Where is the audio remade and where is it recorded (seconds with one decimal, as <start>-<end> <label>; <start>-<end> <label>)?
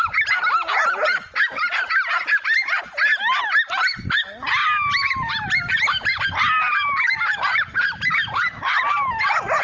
0.0-4.6 recorded; 4.6-9.2 remade; 9.2-9.6 recorded